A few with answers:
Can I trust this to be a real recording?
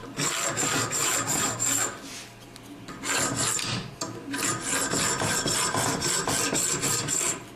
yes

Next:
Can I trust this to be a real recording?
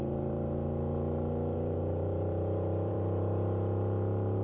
no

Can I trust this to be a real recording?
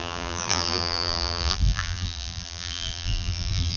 no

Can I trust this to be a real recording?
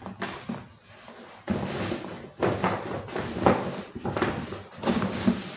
yes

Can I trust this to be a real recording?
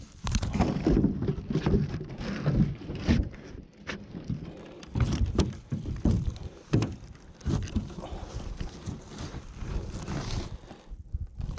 no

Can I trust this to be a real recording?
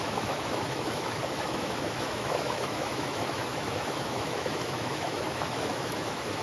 no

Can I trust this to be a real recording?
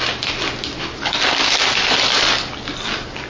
yes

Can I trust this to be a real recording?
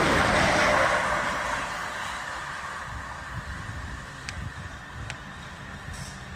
yes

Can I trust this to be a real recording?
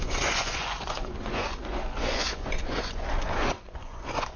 no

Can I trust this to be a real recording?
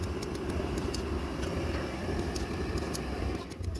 yes